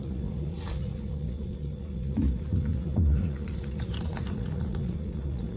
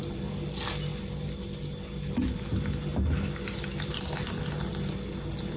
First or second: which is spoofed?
first